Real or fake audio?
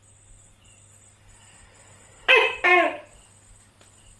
real